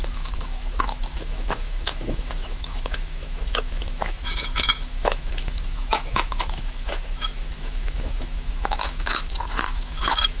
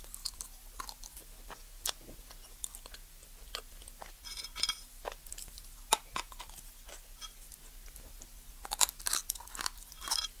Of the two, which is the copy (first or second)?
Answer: first